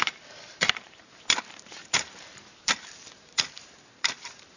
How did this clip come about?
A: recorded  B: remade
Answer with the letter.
B